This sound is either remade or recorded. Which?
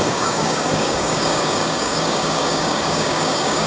remade